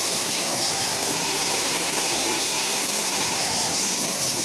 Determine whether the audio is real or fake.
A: fake